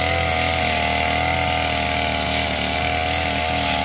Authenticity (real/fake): real